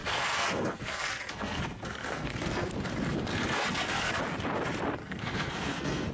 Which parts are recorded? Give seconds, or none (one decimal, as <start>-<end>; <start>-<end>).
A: 2.7-3.3; 4.2-5.0